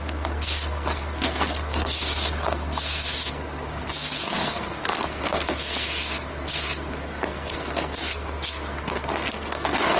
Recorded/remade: remade